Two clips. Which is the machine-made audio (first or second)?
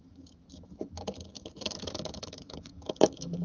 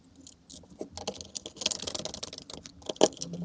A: first